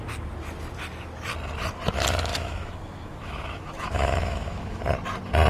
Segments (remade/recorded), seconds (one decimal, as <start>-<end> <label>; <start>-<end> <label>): 0.0-2.3 recorded; 2.3-4.8 remade; 4.8-5.5 recorded